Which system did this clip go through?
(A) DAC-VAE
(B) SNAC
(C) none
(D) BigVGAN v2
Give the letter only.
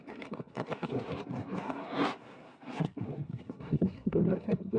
B